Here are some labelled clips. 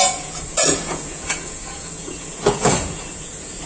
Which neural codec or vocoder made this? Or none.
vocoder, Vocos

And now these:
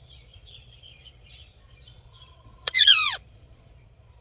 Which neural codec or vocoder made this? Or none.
vocoder, Vocos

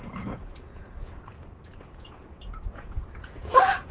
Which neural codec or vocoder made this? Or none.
vocoder, Vocos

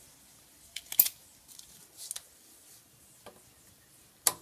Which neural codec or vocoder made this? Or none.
none